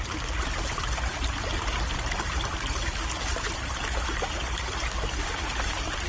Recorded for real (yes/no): yes